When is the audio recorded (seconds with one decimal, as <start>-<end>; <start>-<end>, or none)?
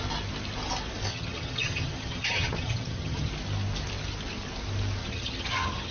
0.0-1.1; 3.3-5.0